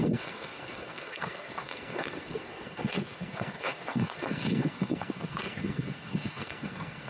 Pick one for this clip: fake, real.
fake